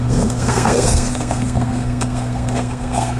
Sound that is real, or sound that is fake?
fake